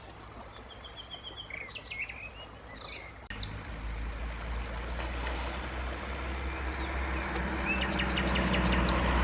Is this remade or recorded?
recorded